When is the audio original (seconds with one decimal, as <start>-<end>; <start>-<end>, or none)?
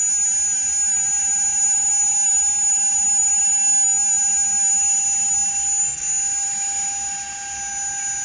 0.0-8.2